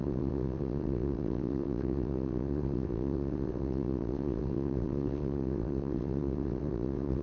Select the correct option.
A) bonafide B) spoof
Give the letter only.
B